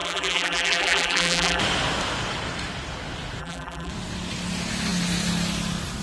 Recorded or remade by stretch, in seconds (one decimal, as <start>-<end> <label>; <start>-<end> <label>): 0.0-1.6 remade; 1.6-3.4 recorded; 3.4-3.9 remade; 3.9-6.0 recorded